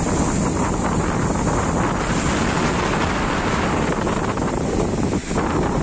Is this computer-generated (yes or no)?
no